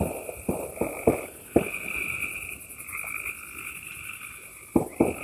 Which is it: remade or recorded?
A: recorded